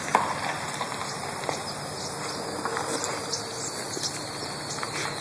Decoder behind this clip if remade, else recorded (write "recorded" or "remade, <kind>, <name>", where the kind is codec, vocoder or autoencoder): recorded